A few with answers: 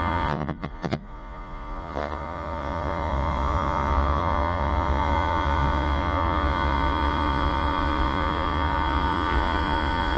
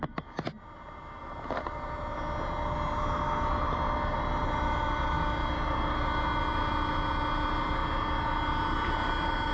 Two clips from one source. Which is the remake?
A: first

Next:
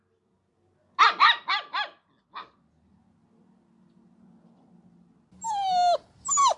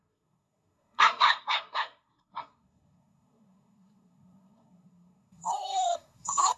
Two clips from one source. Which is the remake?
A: second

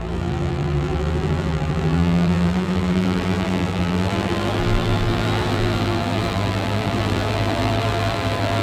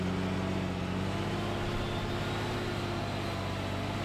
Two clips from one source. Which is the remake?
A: first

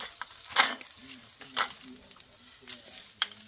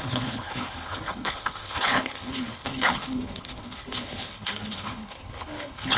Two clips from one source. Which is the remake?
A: second